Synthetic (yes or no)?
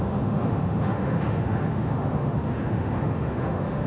yes